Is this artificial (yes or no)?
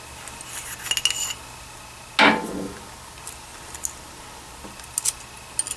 no